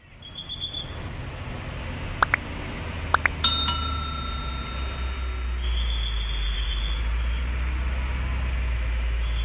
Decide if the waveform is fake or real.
real